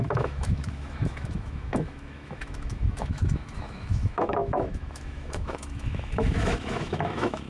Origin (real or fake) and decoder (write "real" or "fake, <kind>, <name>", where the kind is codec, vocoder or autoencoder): fake, autoencoder, DAC-VAE